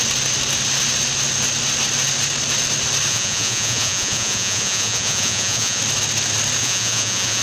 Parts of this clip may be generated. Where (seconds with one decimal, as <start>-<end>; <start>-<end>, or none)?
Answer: 3.1-5.8; 6.6-7.4